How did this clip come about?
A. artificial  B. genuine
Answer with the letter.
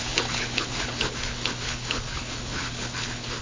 A